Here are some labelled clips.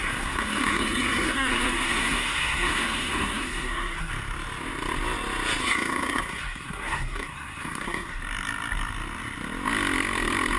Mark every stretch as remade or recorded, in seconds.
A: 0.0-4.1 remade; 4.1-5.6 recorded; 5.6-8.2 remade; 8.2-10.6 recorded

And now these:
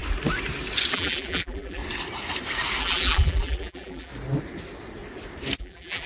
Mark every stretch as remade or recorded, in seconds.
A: 0.0-0.9 recorded; 0.9-1.8 remade; 1.8-2.8 recorded; 2.8-4.1 remade; 4.1-5.6 recorded; 5.6-6.1 remade

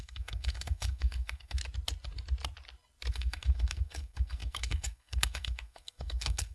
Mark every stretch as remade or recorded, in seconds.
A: 0.0-1.6 remade; 1.6-3.1 recorded; 3.1-6.5 remade